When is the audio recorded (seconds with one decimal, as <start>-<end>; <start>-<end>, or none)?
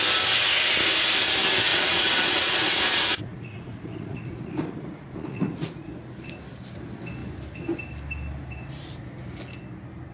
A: 0.0-1.7; 5.9-10.1